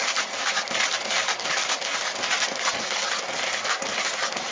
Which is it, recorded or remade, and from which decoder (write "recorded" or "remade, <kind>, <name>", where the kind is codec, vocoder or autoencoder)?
recorded